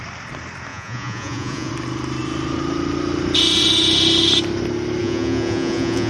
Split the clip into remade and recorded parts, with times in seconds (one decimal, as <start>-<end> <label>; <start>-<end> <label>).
0.0-0.7 recorded; 0.7-1.7 remade; 1.7-5.0 recorded; 5.0-6.1 remade